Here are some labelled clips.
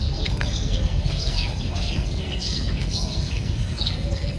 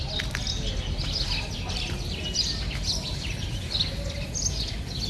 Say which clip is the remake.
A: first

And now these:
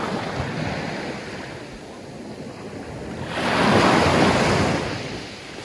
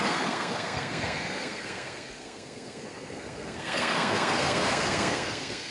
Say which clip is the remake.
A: second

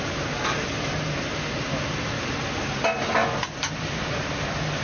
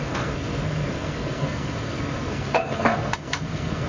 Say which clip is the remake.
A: second